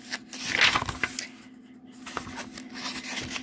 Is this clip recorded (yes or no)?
yes